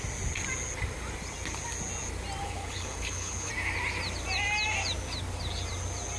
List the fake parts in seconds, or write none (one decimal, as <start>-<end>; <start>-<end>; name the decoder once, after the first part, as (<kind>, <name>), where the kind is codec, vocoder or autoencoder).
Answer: 2.4-3.5 (codec, HILCodec)